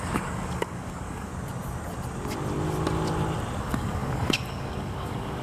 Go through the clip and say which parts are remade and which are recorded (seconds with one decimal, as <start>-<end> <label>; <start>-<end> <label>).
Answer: 0.0-1.3 remade; 1.3-3.6 recorded; 3.6-5.4 remade